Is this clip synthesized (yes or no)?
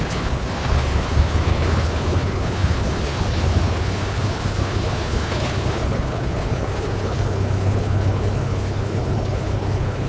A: yes